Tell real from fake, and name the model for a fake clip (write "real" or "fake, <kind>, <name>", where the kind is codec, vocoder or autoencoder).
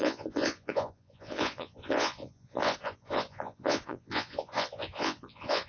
fake, vocoder, Vocos